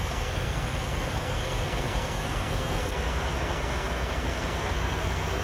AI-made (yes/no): yes